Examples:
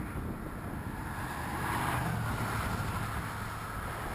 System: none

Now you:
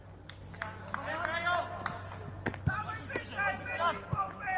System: none